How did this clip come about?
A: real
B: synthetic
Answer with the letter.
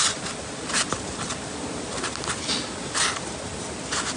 A